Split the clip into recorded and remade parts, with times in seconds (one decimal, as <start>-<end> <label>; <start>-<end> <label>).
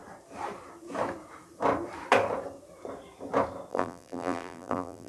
0.0-3.7 recorded; 3.7-5.1 remade